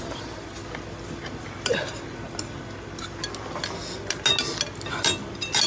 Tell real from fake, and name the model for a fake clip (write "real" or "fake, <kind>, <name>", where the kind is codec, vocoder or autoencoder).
real